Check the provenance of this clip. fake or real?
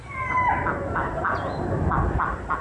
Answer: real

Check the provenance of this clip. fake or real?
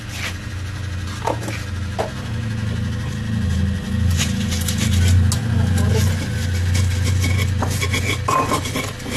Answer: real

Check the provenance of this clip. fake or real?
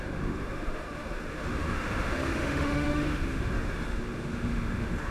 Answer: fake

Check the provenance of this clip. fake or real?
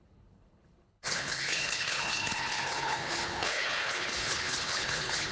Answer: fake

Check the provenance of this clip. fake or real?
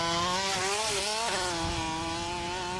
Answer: real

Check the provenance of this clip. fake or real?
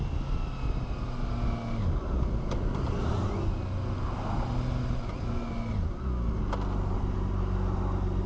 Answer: real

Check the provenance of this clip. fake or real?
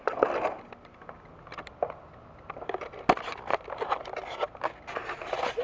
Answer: real